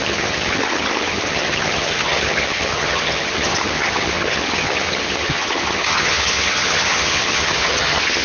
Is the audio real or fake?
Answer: fake